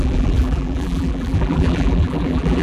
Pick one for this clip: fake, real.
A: fake